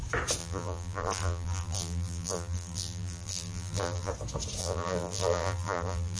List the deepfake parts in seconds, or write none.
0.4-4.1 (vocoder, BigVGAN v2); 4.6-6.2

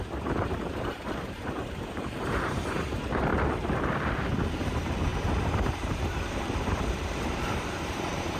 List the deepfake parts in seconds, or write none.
0.0-3.3 (vocoder, BigVGAN v2); 4.5-8.4

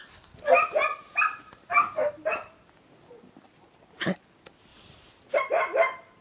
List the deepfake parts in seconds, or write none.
4.7-5.4 (vocoder, BigVGAN v2)

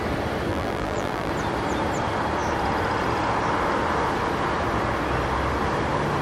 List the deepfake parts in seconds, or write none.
0.5-1.3 (vocoder, BigVGAN v2)

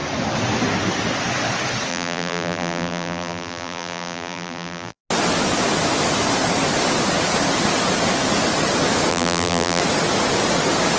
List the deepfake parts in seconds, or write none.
1.9-5.0 (vocoder, BigVGAN v2); 9.1-9.8

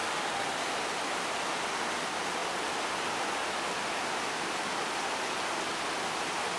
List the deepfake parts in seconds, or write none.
none

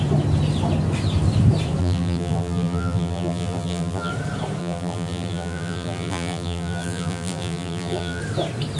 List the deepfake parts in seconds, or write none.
1.8-4.1 (vocoder, BigVGAN v2); 4.6-8.2